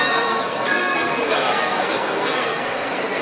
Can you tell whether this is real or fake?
fake